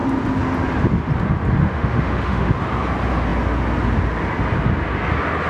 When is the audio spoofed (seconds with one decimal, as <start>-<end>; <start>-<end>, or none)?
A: 1.6-2.5